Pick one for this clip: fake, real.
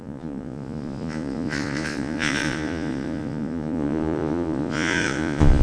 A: fake